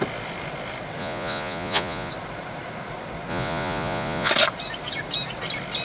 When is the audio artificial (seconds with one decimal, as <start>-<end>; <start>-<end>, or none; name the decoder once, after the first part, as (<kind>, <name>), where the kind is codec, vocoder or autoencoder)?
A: 1.0-2.1 (vocoder, Vocos); 3.3-4.3